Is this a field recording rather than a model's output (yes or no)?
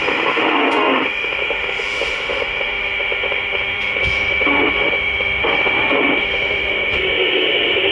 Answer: no